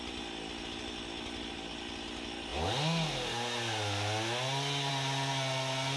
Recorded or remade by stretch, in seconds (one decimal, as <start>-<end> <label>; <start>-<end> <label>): 0.0-6.0 recorded